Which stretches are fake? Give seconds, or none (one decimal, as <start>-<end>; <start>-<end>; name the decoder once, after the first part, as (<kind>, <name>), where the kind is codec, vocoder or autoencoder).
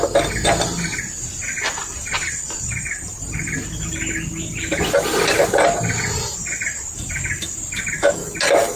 2.2-3.4 (vocoder, BigVGAN v2)